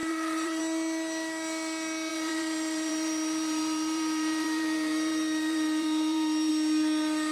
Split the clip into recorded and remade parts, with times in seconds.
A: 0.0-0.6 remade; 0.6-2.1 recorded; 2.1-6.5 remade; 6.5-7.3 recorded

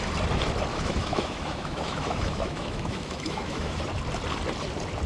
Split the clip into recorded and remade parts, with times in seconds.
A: 0.0-0.7 recorded; 0.7-3.8 remade; 3.8-5.1 recorded

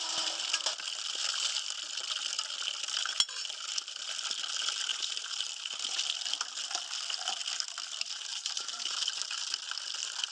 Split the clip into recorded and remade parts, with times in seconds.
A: 0.0-4.9 recorded; 4.9-5.5 remade; 5.5-8.3 recorded; 8.3-9.4 remade; 9.4-10.3 recorded

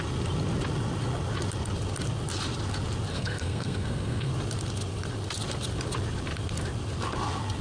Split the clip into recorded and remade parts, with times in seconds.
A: 0.0-3.1 recorded; 3.1-4.3 remade; 4.3-7.6 recorded

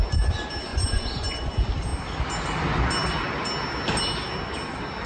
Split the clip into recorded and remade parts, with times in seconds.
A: 0.0-0.7 recorded; 0.7-1.5 remade; 1.5-5.1 recorded